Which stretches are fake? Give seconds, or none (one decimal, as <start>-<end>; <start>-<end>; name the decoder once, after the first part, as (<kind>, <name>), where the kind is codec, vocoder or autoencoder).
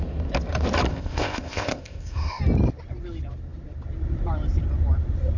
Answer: 0.9-2.4 (codec, ZipCodec)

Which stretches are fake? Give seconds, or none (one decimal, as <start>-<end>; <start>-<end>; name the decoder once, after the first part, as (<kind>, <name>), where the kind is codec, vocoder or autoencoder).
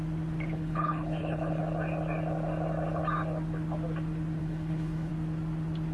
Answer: 0.5-1.6 (codec, HILCodec); 4.4-5.1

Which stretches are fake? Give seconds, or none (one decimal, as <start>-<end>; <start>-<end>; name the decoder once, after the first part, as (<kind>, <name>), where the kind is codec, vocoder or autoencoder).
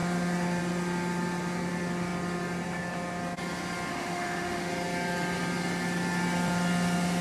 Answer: 3.9-4.7 (autoencoder, DAC-VAE)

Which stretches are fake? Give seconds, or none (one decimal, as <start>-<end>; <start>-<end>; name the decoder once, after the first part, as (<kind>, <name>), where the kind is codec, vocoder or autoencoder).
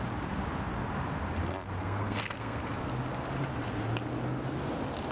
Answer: 1.8-2.6 (codec, SNAC)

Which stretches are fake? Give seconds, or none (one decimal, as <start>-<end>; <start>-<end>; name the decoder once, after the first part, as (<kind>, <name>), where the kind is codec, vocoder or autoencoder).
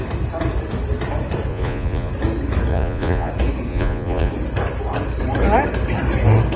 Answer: 1.5-2.1 (vocoder, Vocos); 2.7-3.3; 3.7-4.3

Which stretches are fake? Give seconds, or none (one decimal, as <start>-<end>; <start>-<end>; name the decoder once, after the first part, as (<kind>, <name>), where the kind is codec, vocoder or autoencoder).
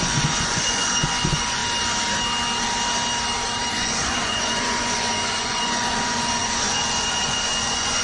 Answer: 0.0-1.6 (vocoder, Vocos); 3.7-8.0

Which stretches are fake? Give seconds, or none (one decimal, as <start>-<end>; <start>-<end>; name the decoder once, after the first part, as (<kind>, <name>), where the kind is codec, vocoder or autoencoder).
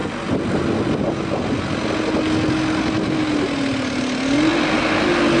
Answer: none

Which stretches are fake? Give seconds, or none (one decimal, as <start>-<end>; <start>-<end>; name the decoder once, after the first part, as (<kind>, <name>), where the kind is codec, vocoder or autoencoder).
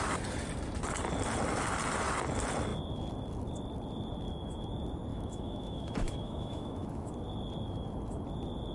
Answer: 5.1-7.1 (autoencoder, DAC-VAE)